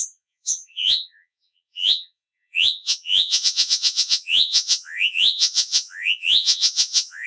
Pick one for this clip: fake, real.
fake